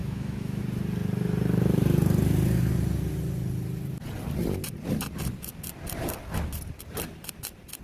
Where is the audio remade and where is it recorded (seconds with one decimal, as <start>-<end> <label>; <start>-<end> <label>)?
0.0-0.6 remade; 0.6-7.8 recorded